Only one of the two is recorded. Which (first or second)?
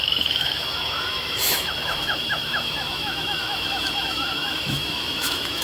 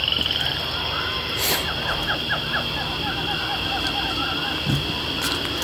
second